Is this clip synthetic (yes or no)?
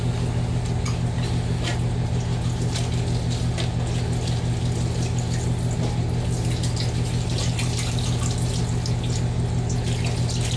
no